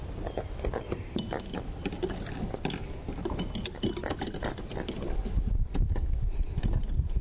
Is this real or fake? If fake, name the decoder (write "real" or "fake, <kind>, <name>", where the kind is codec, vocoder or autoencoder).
real